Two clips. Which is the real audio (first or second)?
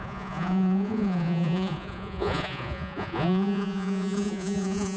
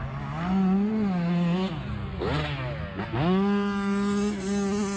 second